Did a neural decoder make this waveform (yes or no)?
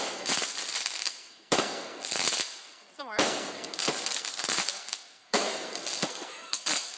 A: yes